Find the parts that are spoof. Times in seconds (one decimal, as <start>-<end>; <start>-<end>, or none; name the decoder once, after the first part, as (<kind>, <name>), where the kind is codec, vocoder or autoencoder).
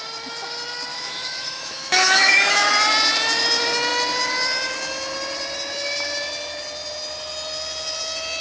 0.9-2.7 (autoencoder, DAC-VAE)